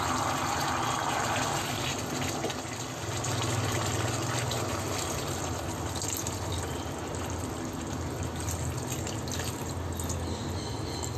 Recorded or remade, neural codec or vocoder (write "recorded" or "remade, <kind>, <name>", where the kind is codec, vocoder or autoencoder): recorded